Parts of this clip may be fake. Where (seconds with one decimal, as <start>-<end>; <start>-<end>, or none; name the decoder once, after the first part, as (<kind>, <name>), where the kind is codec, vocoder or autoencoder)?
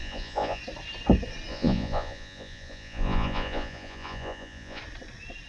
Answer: 0.0-0.6 (vocoder, Vocos); 1.5-4.8